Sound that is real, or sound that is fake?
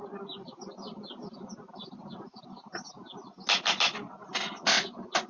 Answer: real